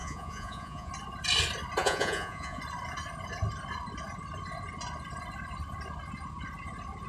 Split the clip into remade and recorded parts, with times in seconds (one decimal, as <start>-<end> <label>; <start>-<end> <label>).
0.0-0.9 remade; 0.9-1.8 recorded; 1.8-2.6 remade; 2.6-7.1 recorded